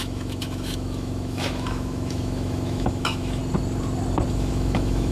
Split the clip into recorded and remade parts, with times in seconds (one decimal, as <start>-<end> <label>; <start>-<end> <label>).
0.0-3.4 remade; 3.4-4.3 recorded; 4.3-5.1 remade